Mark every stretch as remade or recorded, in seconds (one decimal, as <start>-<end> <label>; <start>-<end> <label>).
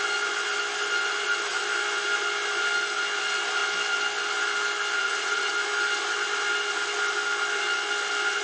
0.0-5.0 recorded; 5.0-5.5 remade; 5.5-8.4 recorded